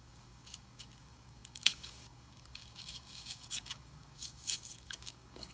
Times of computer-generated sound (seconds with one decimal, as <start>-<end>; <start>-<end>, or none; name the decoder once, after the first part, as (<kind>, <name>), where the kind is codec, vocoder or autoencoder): 0.0-5.5 (codec, DAC)